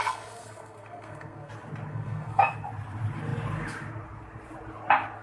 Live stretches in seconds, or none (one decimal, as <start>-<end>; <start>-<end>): 1.5-1.9; 2.5-5.2